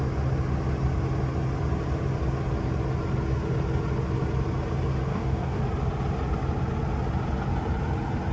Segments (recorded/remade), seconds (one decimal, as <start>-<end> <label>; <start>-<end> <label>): 0.0-5.1 recorded; 5.1-5.6 remade; 5.6-8.3 recorded